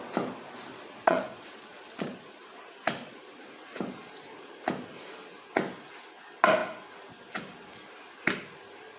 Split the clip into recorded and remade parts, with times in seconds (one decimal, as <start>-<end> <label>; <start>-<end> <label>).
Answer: 0.0-0.7 recorded; 0.7-2.6 remade; 2.6-3.0 recorded; 3.0-3.5 remade; 3.5-9.0 recorded